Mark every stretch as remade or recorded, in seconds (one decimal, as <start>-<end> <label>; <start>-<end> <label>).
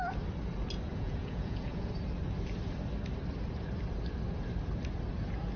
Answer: 0.0-0.9 recorded; 0.9-1.9 remade; 1.9-5.6 recorded